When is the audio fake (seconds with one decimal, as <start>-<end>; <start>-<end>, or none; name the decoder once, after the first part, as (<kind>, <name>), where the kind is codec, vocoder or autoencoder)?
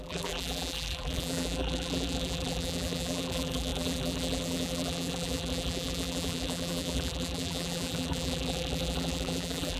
0.0-9.8 (vocoder, BigVGAN v2)